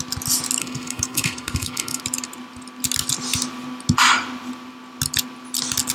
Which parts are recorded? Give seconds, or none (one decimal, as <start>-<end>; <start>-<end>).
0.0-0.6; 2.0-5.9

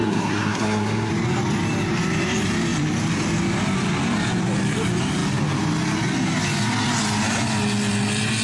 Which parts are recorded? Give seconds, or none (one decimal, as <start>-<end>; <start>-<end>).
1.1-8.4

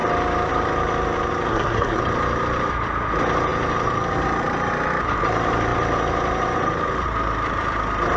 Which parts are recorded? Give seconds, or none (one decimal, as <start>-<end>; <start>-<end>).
0.0-1.5; 2.0-8.2